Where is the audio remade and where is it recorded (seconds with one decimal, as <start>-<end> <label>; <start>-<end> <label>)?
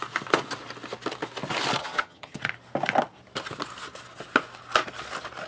0.0-1.8 recorded; 1.8-2.4 remade; 2.4-5.5 recorded